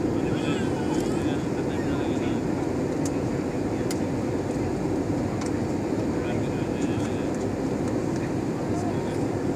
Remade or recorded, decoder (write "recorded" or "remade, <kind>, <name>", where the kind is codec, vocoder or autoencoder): recorded